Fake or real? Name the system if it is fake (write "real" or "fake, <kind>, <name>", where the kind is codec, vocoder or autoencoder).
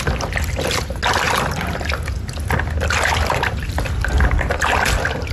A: real